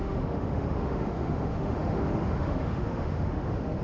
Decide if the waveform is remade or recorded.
remade